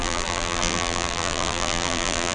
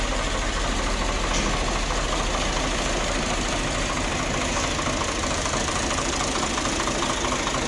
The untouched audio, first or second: second